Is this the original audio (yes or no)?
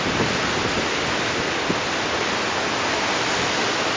yes